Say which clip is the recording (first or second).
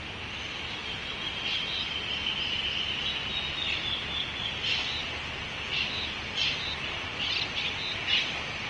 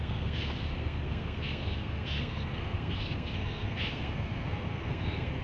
first